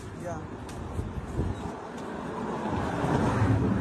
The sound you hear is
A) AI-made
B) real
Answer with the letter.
B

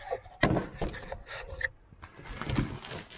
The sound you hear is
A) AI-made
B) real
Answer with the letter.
B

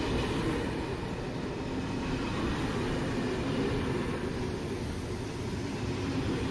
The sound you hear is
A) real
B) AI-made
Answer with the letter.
A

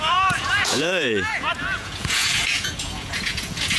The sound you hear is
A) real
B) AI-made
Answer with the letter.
B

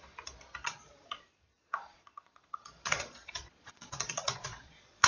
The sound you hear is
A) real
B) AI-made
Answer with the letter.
B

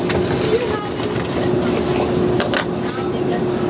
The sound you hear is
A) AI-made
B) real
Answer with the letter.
B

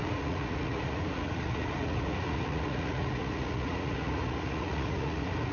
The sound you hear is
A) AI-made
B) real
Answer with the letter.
A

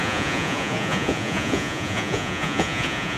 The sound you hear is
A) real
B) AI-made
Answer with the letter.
B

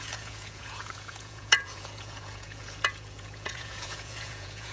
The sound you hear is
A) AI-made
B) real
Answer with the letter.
A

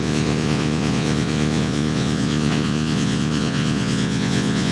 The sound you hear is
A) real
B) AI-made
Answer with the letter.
B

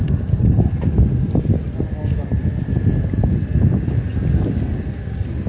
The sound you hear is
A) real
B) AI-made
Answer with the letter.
A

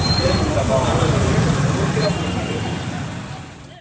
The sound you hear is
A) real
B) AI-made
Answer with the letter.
A